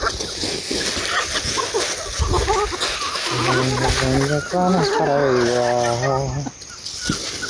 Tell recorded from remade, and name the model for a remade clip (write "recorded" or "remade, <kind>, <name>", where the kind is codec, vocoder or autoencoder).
recorded